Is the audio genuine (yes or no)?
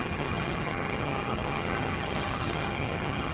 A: no